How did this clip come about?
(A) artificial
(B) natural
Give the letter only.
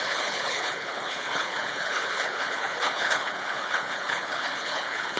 A